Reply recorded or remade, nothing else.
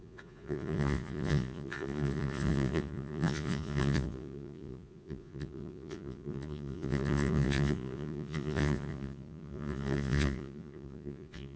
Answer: remade